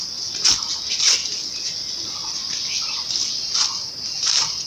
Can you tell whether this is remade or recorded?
recorded